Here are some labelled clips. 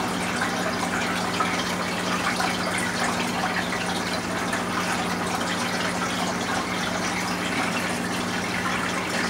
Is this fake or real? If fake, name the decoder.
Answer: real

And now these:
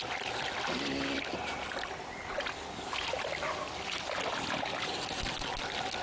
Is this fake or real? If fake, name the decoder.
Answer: real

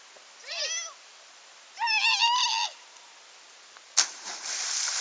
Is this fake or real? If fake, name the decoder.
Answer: real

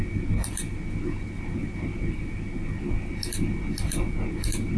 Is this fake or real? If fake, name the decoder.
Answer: real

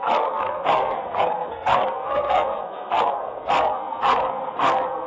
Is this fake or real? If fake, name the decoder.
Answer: fake, codec, SNAC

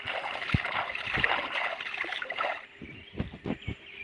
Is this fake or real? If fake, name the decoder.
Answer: real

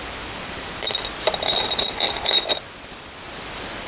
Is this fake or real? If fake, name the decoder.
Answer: fake, vocoder, BigVGAN v2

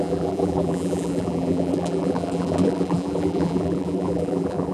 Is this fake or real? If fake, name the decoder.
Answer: fake, vocoder, BigVGAN v2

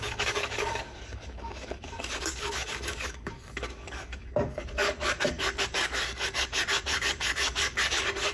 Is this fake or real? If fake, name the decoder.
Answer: fake, codec, DAC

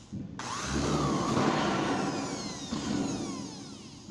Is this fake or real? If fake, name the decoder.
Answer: real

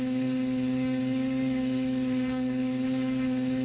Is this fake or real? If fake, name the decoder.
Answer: fake, codec, DAC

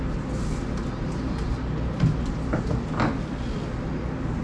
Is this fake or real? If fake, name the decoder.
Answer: real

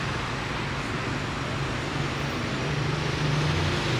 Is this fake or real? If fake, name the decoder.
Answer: real